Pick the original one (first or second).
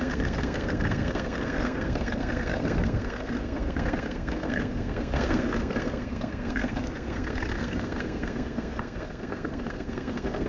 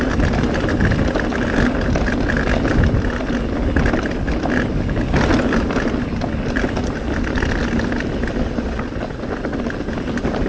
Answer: second